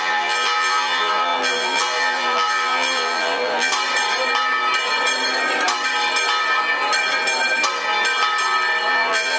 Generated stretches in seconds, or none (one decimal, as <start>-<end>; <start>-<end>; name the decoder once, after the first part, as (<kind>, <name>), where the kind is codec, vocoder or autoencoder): 0.0-3.7 (vocoder, BigVGAN v2); 8.9-9.4